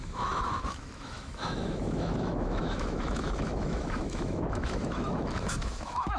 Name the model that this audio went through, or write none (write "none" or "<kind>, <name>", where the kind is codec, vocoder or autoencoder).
autoencoder, DAC-VAE